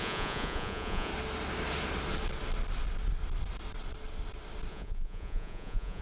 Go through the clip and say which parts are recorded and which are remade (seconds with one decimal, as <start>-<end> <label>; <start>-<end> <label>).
0.0-1.1 remade; 1.1-4.7 recorded; 4.7-6.0 remade